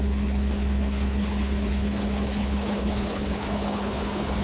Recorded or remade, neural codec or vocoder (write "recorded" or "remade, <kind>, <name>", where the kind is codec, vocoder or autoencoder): remade, codec, HILCodec